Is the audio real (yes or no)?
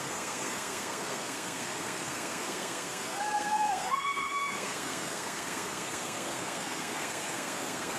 no